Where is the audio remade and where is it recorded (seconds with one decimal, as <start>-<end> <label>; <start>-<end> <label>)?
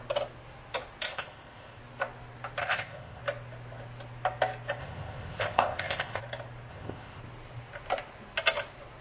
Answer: 0.0-1.1 recorded; 1.1-1.8 remade; 1.8-2.6 recorded; 2.6-3.2 remade; 3.2-4.8 recorded; 4.8-6.2 remade; 6.2-6.7 recorded; 6.7-7.2 remade; 7.2-9.0 recorded